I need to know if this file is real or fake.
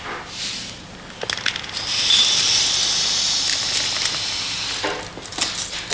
real